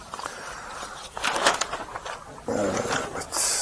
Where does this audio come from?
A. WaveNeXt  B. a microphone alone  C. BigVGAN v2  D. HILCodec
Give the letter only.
C